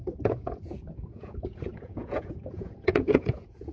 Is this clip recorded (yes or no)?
no